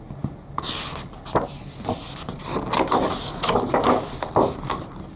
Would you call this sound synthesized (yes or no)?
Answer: no